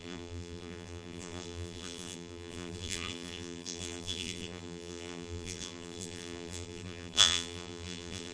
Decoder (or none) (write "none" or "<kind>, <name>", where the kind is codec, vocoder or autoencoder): vocoder, BigVGAN v2